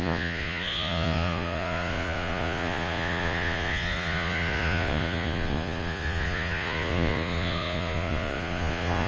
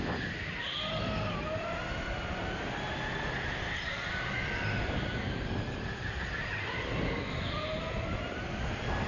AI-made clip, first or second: first